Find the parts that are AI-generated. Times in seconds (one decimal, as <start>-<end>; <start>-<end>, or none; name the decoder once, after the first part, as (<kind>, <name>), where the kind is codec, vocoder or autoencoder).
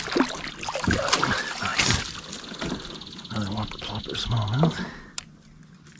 none